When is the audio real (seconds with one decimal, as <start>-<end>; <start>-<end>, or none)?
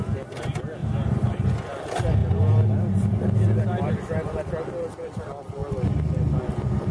0.0-0.8; 1.5-2.2; 4.4-6.9